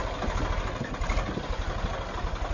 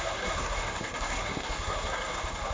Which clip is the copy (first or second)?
second